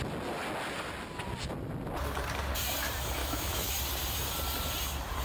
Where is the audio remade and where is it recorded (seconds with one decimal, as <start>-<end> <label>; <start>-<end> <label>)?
0.0-3.2 recorded; 3.2-3.7 remade; 3.7-5.2 recorded